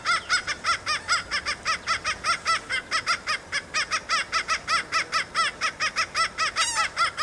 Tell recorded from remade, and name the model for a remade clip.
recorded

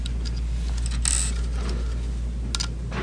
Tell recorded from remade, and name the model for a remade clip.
recorded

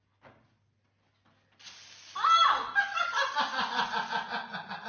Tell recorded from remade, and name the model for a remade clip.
recorded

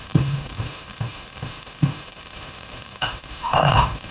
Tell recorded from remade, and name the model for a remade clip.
remade, autoencoder, DAC-VAE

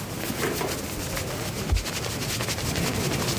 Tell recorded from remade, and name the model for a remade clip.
recorded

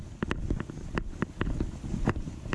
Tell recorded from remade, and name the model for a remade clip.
recorded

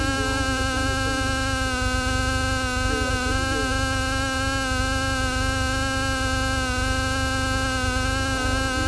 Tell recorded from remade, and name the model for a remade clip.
recorded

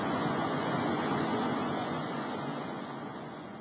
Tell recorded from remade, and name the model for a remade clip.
remade, vocoder, Vocos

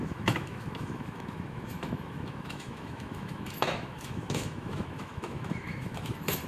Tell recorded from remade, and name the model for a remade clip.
remade, autoencoder, DAC-VAE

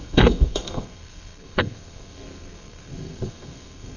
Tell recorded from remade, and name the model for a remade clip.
remade, codec, SNAC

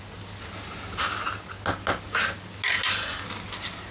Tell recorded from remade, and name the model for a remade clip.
recorded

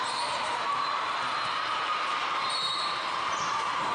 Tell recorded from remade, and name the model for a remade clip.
remade, vocoder, BigVGAN v2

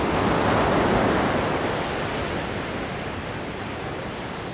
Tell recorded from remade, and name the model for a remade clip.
recorded